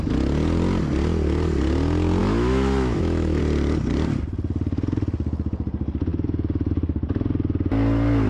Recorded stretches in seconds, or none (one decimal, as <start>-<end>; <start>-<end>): 0.0-2.2; 3.4-8.3